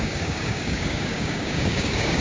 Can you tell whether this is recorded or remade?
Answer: remade